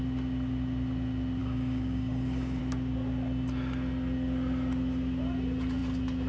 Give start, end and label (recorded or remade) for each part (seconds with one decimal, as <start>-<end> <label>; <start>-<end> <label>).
0.0-1.4 recorded; 1.4-2.6 remade; 2.6-6.3 recorded